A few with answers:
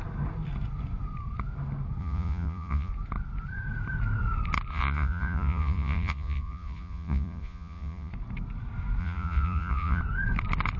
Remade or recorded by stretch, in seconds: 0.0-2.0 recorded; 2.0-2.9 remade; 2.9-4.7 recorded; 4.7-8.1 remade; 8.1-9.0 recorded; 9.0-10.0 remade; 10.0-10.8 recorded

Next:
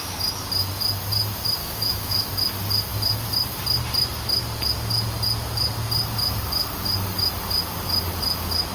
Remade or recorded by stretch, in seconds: 0.0-1.6 recorded; 1.6-2.3 remade; 2.3-8.7 recorded

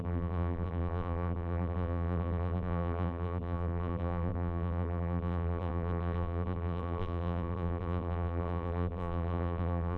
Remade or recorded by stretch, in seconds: 0.0-10.0 remade

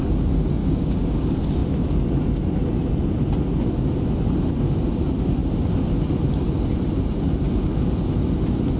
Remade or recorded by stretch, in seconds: 0.0-0.6 recorded; 0.6-1.2 remade; 1.2-8.8 recorded

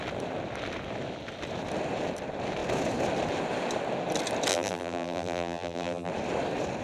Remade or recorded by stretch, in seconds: 0.0-4.5 recorded; 4.5-6.1 remade; 6.1-6.8 recorded

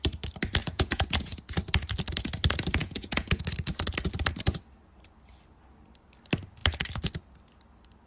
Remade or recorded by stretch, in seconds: 0.0-0.6 recorded; 0.6-1.4 remade; 1.4-2.8 recorded; 2.8-3.4 remade; 3.4-8.1 recorded

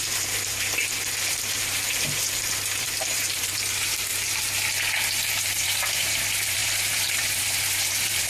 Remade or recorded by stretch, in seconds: 0.0-4.1 remade; 4.1-5.3 recorded; 5.3-8.3 remade

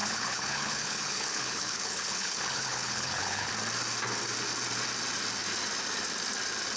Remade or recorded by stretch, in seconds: 0.0-3.5 remade; 3.5-6.8 recorded